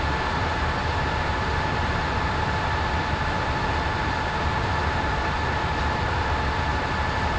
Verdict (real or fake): real